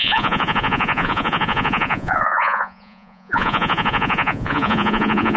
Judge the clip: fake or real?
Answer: fake